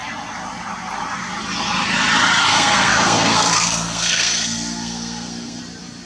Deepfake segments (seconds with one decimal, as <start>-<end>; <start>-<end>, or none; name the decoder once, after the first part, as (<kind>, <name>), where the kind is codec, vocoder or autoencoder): 2.5-5.6 (codec, SNAC)